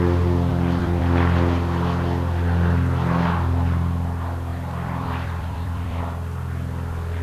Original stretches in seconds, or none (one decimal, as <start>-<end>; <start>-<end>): 0.0-0.5; 1.0-4.5; 6.0-7.2